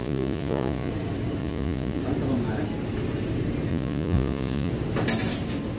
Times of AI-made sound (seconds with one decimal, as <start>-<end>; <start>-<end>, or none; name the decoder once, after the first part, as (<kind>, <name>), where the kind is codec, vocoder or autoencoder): 0.0-0.9 (vocoder, Vocos); 1.4-2.0; 3.7-4.7